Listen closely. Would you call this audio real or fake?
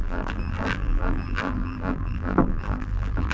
fake